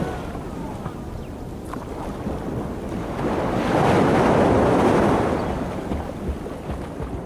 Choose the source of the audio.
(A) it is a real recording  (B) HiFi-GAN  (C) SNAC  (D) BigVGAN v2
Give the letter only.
A